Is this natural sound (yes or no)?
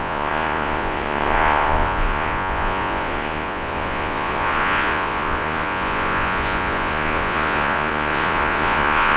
no